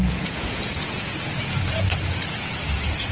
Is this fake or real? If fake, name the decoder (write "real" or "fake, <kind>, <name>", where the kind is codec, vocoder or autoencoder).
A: fake, vocoder, Vocos